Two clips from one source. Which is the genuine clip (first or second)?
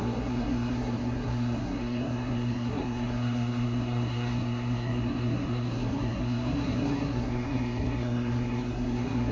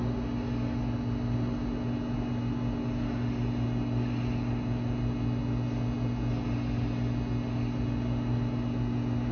second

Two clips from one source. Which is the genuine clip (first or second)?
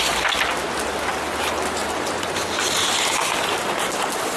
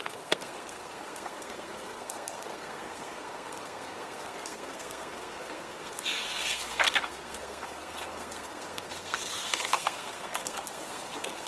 first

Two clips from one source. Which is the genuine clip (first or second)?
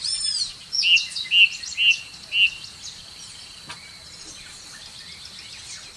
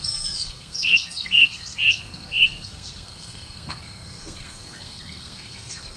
first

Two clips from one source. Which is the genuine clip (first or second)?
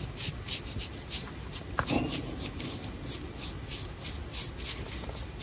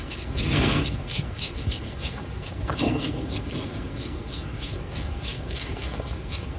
first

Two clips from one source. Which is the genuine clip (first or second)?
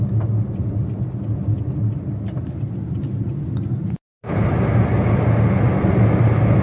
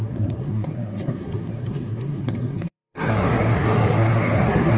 first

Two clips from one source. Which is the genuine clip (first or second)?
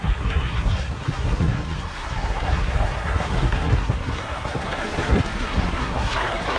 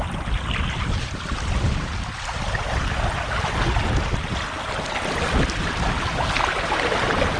second